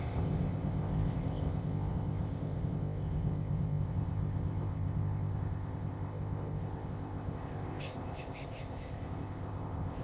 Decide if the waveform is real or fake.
fake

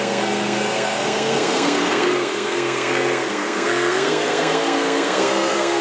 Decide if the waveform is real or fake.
fake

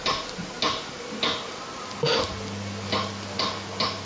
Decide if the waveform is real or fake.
real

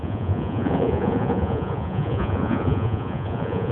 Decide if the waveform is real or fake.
fake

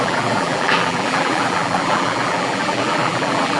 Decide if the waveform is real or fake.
fake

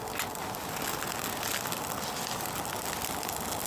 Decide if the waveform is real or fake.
real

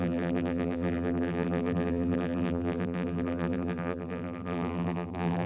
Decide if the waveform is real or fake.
fake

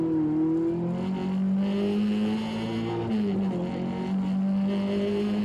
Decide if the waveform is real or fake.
real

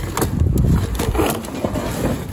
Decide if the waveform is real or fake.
real